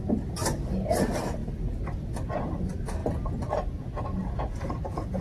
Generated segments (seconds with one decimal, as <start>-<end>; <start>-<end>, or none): none